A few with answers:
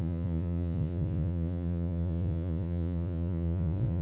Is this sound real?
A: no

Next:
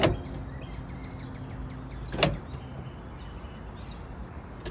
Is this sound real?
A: yes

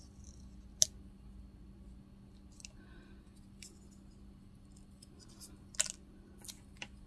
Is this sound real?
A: yes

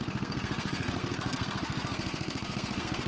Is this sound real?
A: no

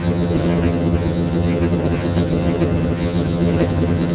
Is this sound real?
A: no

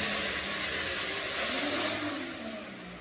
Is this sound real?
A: yes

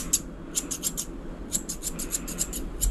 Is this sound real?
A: yes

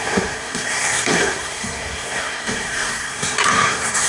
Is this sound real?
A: no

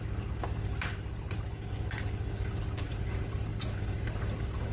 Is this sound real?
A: yes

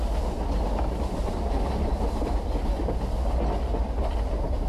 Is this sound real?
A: yes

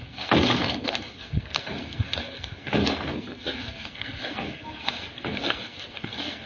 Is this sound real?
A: no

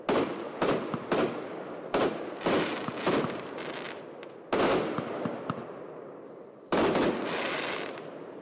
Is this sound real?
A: yes